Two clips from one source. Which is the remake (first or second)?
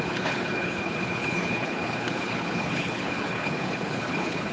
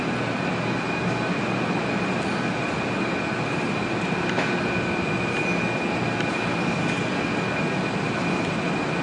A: first